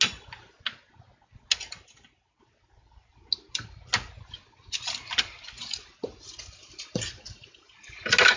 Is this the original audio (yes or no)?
yes